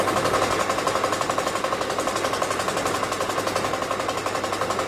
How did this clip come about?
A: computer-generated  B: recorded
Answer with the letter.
B